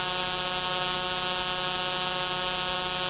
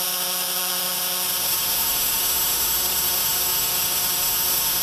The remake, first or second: second